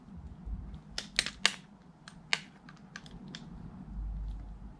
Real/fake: real